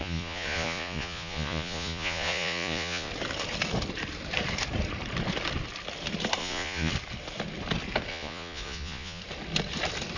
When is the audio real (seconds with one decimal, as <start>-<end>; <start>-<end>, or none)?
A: 3.1-6.4; 6.9-8.1; 9.2-10.2